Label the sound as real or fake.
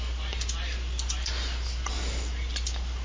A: real